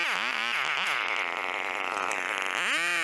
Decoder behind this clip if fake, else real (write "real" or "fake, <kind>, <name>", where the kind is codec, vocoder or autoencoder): real